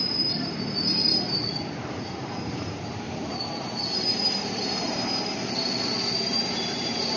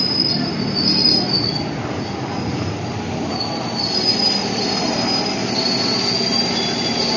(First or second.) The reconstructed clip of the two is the first